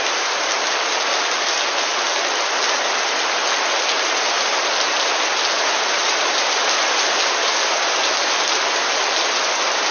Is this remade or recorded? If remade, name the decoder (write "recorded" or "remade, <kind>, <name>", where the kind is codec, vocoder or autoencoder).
recorded